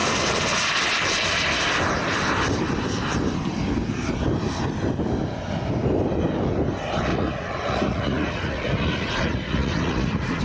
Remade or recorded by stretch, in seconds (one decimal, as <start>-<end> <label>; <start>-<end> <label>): 0.0-7.1 recorded; 7.1-10.4 remade